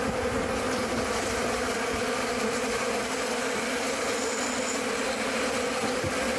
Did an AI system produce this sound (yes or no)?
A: no